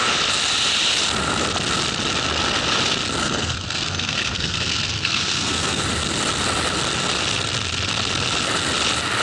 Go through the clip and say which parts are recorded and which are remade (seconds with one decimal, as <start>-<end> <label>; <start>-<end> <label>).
0.0-3.2 recorded; 3.2-5.8 remade; 5.8-9.2 recorded